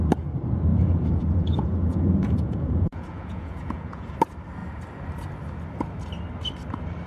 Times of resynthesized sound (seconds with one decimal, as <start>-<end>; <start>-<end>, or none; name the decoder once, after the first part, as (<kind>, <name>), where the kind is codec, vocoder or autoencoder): 0.7-4.1 (vocoder, Vocos)